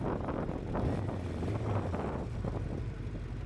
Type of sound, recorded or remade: recorded